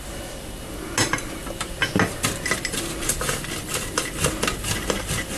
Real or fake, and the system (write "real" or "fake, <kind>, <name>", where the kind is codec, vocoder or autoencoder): real